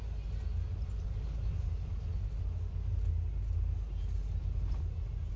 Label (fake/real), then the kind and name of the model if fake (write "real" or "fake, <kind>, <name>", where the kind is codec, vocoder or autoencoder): real